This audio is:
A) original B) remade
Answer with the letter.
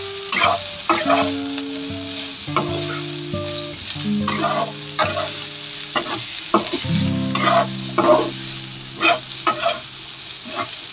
A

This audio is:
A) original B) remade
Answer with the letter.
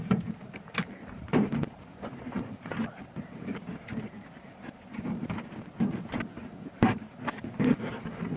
B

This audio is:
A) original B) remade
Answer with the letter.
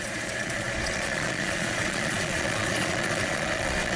B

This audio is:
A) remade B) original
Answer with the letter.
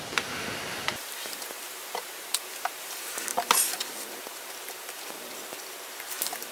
A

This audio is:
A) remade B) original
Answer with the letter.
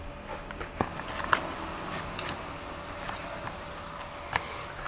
B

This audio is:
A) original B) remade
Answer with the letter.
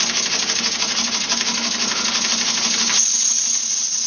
A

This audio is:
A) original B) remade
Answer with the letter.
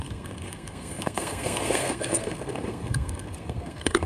B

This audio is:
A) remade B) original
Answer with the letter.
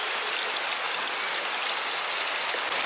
B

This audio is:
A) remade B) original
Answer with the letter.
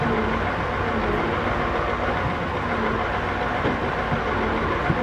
B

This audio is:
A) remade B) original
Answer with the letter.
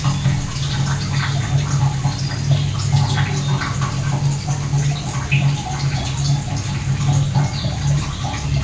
B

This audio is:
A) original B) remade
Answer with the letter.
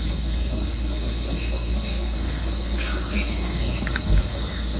B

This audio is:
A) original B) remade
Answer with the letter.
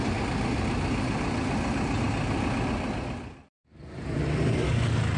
A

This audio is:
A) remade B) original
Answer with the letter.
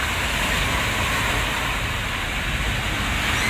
B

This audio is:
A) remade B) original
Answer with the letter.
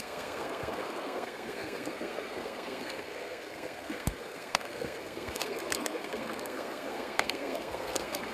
A